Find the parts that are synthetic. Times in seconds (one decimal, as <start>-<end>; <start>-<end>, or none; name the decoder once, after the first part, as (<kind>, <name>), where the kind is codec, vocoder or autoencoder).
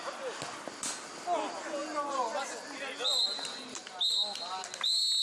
none